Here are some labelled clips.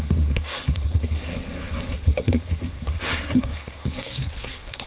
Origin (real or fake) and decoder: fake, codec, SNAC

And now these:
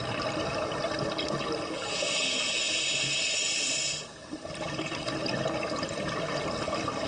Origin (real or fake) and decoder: real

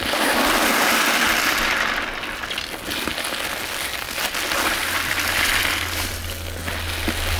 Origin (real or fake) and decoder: real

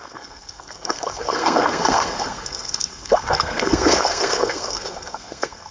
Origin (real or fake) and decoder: fake, codec, SNAC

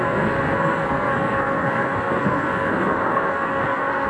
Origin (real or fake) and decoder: fake, codec, SNAC